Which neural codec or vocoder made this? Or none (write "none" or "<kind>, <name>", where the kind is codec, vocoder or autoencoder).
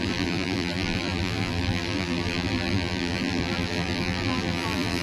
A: vocoder, BigVGAN v2